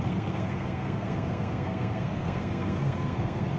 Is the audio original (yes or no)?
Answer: no